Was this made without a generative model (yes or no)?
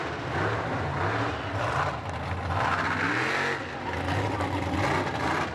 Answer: yes